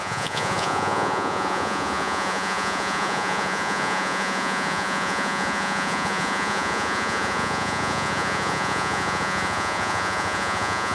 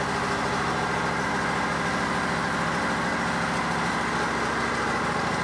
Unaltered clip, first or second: second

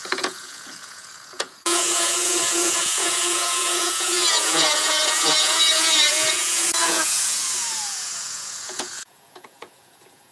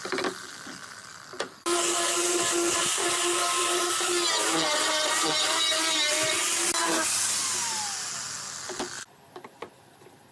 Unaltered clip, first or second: second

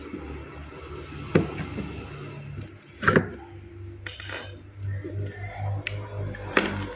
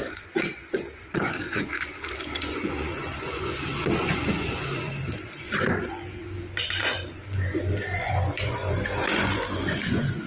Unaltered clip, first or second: first